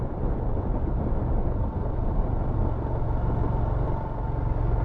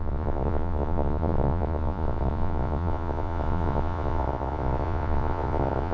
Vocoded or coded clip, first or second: second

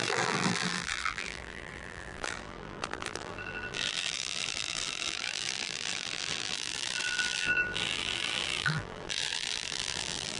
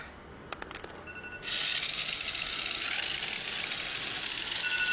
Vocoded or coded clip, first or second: first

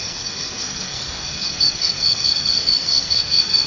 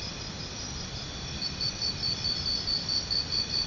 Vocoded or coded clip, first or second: first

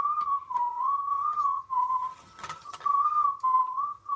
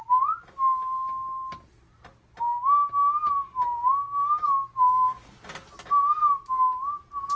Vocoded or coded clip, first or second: first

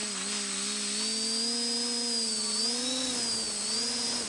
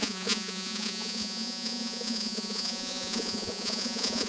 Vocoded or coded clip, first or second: second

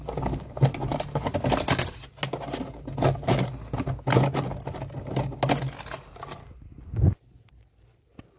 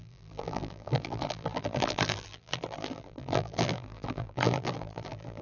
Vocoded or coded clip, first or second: second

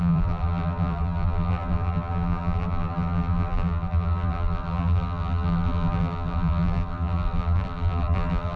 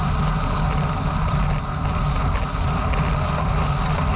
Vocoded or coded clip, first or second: first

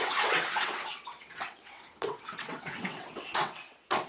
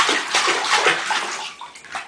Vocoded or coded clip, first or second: first